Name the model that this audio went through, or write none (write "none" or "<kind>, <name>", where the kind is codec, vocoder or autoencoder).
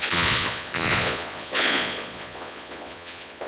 vocoder, Vocos